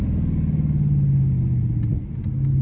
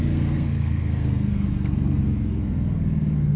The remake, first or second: second